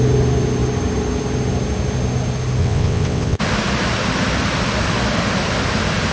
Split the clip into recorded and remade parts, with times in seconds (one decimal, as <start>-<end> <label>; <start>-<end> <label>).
0.0-2.6 recorded; 2.6-3.4 remade; 3.4-6.1 recorded